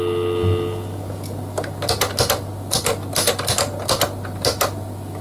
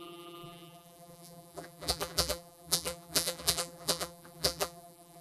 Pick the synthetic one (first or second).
second